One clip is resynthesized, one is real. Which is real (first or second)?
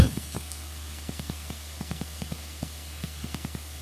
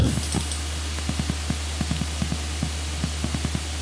second